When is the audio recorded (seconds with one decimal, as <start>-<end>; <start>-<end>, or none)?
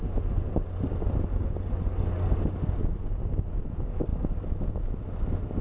0.0-5.6